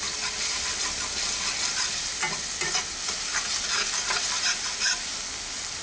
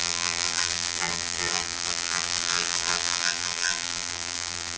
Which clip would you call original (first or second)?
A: first